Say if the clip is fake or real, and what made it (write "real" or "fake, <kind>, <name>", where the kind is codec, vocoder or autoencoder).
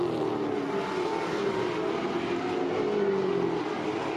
real